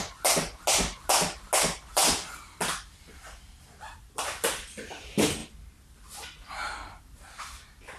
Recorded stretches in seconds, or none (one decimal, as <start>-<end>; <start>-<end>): 0.0-2.0; 4.2-8.0